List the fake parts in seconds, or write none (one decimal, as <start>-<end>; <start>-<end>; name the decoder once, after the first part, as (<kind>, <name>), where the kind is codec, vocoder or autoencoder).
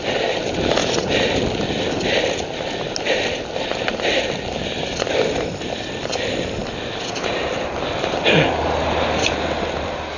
none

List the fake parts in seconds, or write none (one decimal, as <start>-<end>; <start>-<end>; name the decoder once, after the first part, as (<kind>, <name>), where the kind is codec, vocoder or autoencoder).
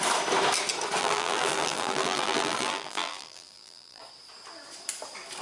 1.0-4.0 (vocoder, BigVGAN v2)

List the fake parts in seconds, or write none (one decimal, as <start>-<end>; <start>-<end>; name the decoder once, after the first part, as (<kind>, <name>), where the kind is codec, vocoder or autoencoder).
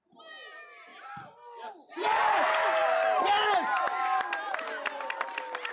none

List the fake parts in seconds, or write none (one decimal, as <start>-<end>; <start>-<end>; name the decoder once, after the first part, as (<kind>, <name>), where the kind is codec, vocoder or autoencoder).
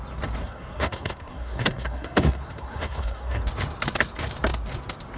0.4-3.4 (codec, SNAC)